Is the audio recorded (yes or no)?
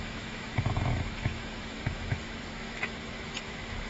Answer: no